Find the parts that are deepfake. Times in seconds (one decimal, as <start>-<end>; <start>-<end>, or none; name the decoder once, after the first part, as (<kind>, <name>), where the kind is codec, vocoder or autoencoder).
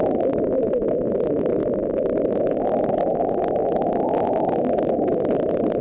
0.0-1.6 (vocoder, BigVGAN v2); 2.4-5.8